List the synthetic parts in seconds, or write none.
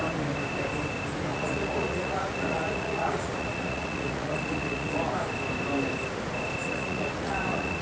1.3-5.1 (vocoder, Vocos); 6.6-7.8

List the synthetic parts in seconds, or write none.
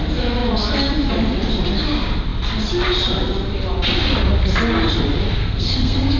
5.4-6.2 (codec, SNAC)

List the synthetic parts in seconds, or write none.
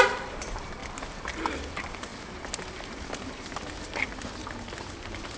0.0-0.8 (vocoder, BigVGAN v2); 1.7-2.1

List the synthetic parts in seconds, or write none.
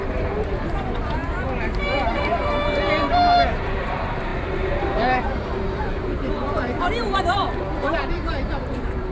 0.0-9.1 (vocoder, BigVGAN v2)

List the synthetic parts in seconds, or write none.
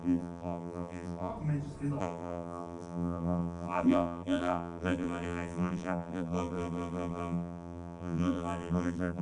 0.0-1.3 (vocoder, BigVGAN v2); 2.0-9.2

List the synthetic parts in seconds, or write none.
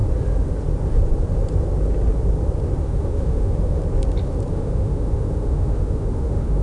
2.8-3.8 (autoencoder, DAC-VAE); 4.5-6.6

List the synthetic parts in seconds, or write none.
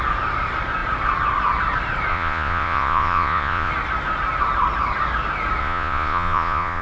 2.1-3.7 (vocoder, Vocos); 5.6-6.8